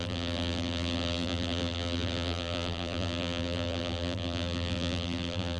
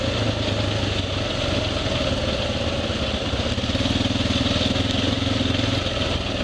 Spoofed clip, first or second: first